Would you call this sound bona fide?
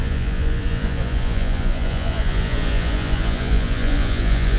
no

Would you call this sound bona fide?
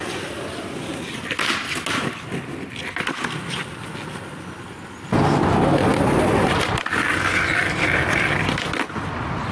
yes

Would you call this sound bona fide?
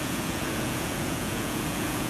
no